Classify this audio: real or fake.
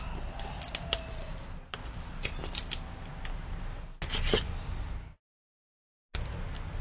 real